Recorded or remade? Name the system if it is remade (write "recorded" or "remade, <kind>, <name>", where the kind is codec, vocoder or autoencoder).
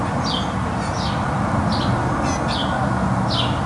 recorded